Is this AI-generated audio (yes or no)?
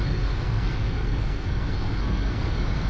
yes